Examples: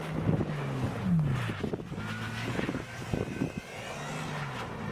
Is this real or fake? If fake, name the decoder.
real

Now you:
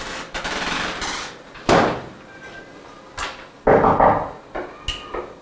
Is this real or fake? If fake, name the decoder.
real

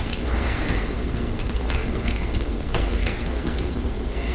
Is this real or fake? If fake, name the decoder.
fake, codec, SNAC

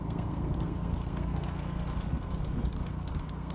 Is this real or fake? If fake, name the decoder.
fake, codec, SNAC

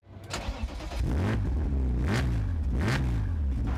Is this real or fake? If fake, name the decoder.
real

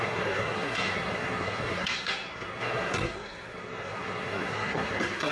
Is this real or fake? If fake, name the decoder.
fake, codec, SNAC